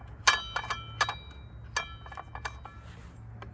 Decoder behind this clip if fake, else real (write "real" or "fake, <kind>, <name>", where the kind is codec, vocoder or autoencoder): real